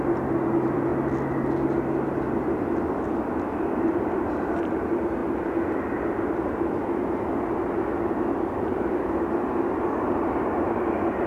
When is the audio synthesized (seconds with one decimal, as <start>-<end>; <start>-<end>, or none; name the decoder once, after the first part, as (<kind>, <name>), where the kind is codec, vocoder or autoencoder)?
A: 0.0-0.9 (vocoder, BigVGAN v2); 2.3-5.2; 8.6-11.3